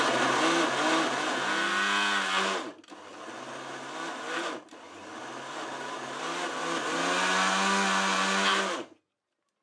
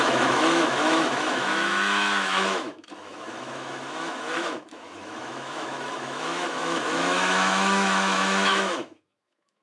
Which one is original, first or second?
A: first